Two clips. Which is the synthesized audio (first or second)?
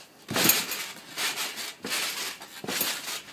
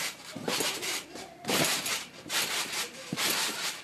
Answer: second